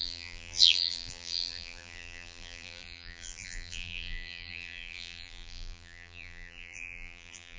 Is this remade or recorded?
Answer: remade